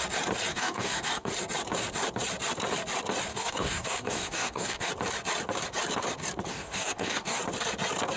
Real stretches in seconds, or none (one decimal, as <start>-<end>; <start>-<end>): 0.0-0.5; 1.3-3.3; 4.9-6.5; 7.4-8.2